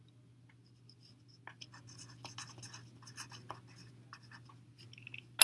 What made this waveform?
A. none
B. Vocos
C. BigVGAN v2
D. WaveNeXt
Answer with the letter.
A